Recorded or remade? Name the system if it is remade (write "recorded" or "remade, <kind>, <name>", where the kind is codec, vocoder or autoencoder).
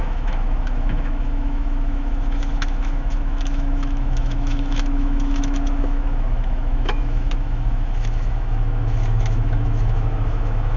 remade, autoencoder, DAC-VAE